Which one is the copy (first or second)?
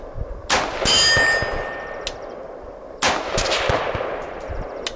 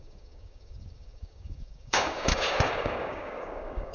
second